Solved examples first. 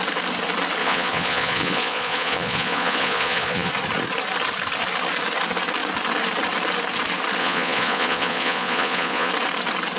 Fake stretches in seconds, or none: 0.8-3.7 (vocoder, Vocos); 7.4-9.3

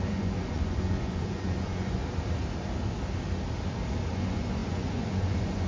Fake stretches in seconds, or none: 0.0-2.0 (vocoder, Vocos); 4.1-5.7

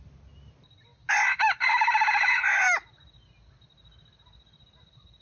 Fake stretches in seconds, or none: none

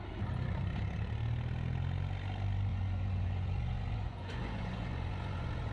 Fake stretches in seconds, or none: 2.7-5.7 (vocoder, Vocos)

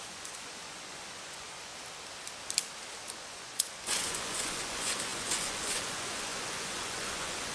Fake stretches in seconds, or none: 0.0-1.7 (vocoder, Vocos); 3.1-7.5